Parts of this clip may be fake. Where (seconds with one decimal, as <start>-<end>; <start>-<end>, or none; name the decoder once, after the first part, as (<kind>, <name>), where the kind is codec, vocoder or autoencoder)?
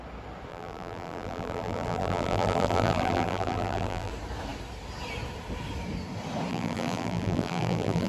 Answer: 0.5-4.1 (vocoder, BigVGAN v2); 6.5-8.1